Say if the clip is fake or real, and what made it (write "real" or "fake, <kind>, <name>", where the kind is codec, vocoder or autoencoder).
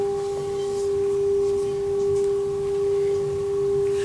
real